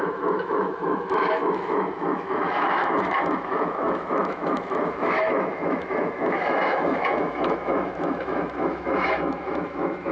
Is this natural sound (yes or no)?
no